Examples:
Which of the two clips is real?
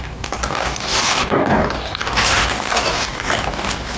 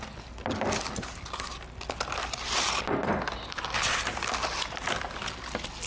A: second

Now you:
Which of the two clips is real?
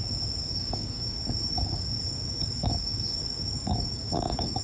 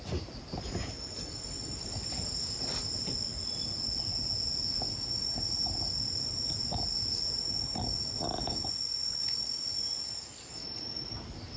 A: second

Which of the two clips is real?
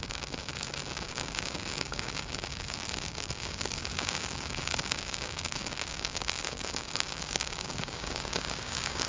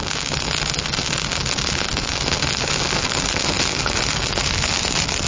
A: second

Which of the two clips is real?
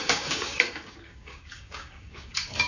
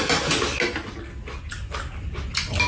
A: second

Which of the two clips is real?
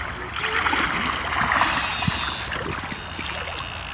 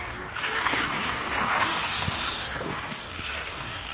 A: first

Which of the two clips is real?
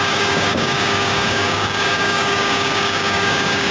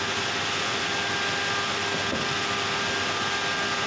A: second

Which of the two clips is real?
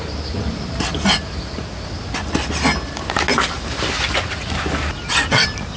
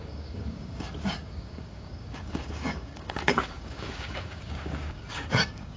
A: first